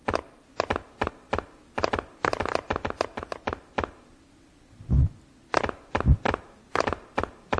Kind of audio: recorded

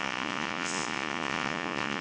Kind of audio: remade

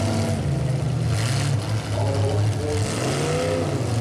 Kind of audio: recorded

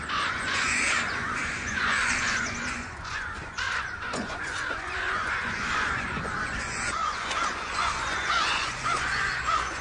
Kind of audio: remade